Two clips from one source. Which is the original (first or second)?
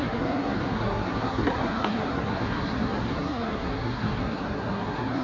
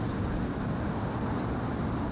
second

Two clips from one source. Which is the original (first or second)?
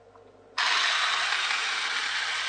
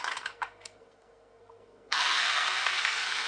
first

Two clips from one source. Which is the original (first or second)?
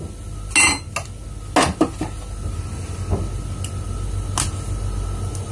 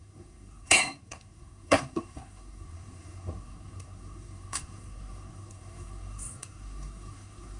first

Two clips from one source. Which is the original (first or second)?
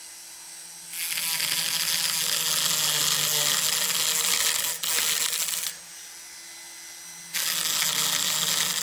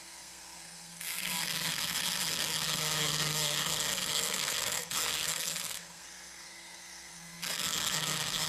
first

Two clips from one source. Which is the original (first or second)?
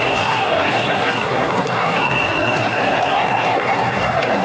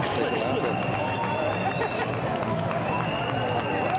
second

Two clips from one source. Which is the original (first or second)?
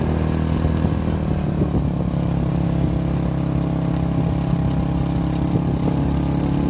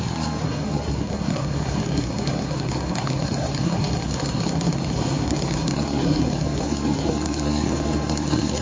first